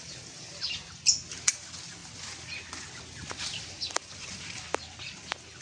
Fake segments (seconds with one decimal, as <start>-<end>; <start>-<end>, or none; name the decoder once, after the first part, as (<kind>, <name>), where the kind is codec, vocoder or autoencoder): none